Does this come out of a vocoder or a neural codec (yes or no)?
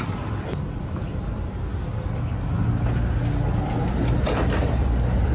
no